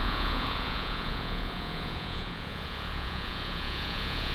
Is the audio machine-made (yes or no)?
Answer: yes